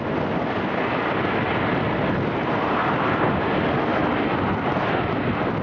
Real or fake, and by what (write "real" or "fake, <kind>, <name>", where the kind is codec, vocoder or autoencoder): real